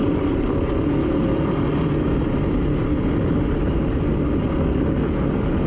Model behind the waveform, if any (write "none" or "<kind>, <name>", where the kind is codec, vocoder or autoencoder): none